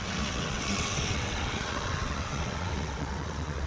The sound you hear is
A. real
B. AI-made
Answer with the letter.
B